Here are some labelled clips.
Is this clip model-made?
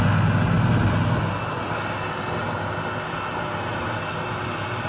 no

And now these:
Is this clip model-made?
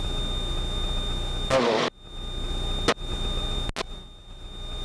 no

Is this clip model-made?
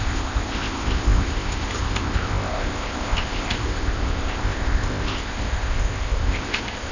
yes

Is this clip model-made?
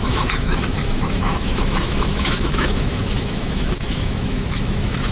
yes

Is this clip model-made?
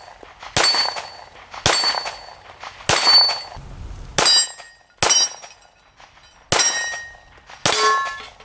no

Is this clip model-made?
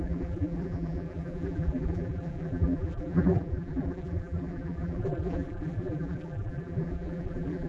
yes